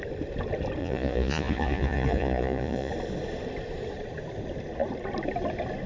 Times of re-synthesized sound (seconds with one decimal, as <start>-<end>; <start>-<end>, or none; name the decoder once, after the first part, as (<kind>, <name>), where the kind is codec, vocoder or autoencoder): 0.8-2.9 (vocoder, Vocos)